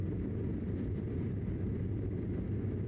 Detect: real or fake fake